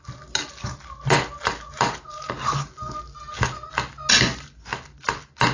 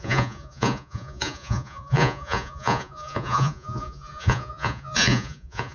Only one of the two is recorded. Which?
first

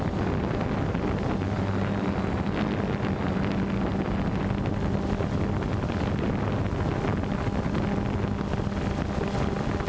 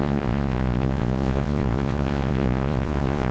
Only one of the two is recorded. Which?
first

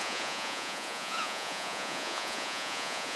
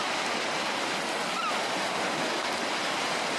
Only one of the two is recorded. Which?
second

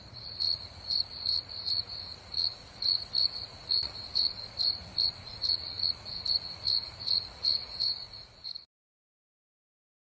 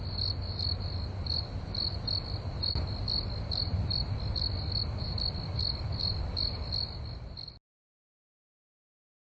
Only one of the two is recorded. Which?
second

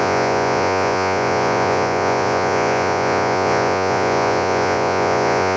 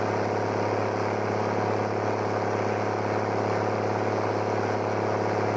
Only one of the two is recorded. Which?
second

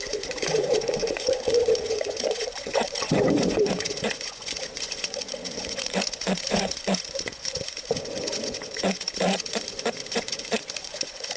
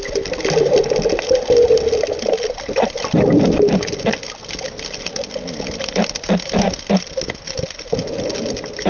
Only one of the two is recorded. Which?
second